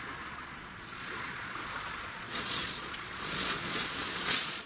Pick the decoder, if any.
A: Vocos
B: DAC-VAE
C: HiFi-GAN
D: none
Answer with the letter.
A